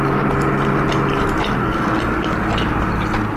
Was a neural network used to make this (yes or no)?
no